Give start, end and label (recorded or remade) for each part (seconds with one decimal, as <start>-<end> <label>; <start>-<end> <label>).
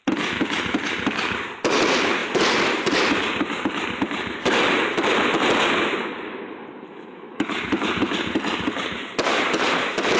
0.0-6.9 recorded; 6.9-7.5 remade; 7.5-10.2 recorded